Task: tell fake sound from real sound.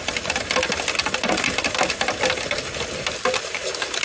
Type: real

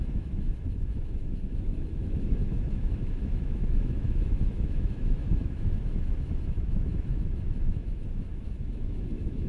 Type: fake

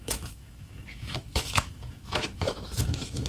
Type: fake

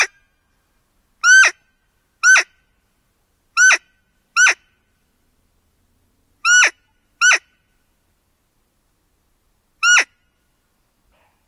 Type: real